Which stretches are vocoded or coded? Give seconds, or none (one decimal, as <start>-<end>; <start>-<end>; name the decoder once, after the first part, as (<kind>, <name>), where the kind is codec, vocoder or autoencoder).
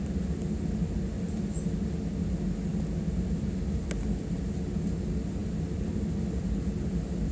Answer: none